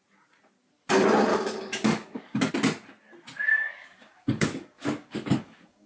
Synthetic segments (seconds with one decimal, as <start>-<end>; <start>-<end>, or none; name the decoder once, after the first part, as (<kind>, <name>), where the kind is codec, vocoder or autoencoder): 1.3-2.5 (codec, DAC); 3.5-5.9